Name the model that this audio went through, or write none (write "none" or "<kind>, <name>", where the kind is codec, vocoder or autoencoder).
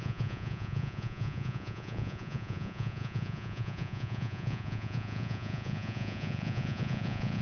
vocoder, Vocos